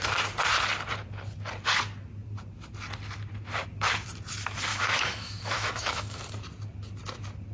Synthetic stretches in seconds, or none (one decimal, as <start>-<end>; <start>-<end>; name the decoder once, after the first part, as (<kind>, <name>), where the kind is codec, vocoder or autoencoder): 4.7-6.2 (autoencoder, DAC-VAE)